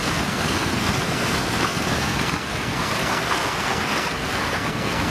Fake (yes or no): yes